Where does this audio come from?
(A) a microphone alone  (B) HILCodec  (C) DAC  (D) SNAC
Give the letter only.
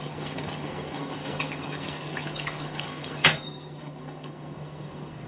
D